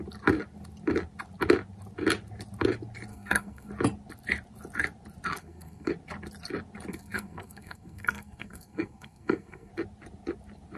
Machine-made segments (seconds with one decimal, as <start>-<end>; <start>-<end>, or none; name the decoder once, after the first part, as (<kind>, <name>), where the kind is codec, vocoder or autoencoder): 3.1-3.7 (codec, SNAC); 5.4-5.9; 6.9-9.7